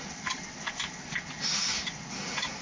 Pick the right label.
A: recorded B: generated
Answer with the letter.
A